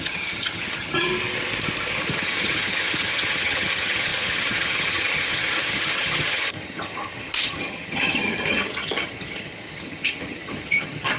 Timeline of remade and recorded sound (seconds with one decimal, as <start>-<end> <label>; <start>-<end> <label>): 0.0-1.1 remade; 1.1-2.0 recorded; 2.0-11.2 remade